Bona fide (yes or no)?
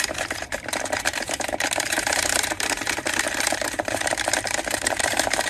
no